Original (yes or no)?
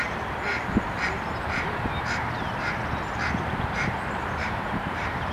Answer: no